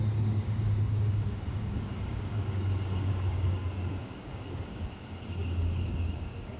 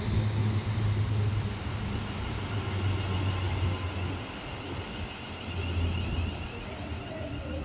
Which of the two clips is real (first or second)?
second